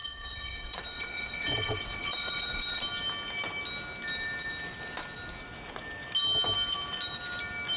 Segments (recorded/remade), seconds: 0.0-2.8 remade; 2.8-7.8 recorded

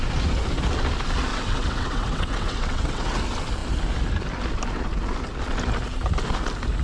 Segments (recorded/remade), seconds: 0.0-1.3 recorded; 1.3-3.2 remade; 3.2-6.8 recorded

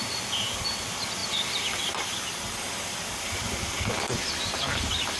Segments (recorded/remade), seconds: 0.0-5.2 recorded

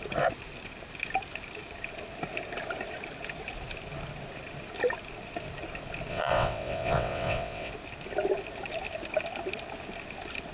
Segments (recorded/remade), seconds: 0.0-6.1 recorded; 6.1-7.7 remade; 7.7-10.5 recorded

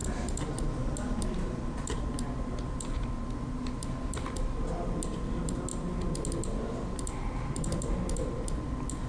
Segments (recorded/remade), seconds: 0.0-9.1 recorded

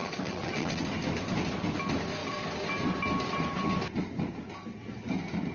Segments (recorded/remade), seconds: 0.0-0.8 remade; 0.8-5.5 recorded